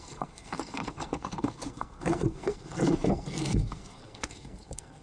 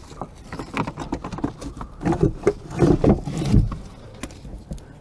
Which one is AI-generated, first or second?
first